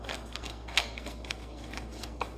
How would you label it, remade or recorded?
remade